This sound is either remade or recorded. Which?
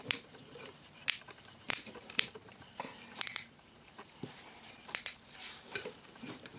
remade